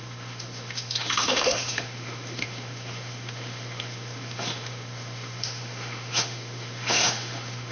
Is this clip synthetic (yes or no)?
yes